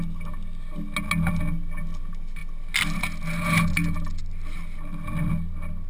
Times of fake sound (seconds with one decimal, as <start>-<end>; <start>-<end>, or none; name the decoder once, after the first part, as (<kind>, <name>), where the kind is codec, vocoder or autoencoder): none